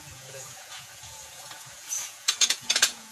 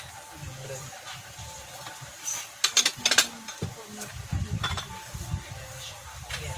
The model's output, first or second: first